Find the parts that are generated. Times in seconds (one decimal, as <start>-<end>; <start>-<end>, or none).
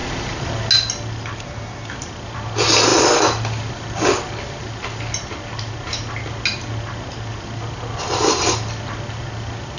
none